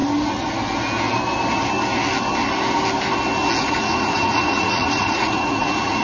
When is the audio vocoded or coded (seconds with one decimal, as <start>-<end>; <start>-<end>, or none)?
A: 3.6-6.0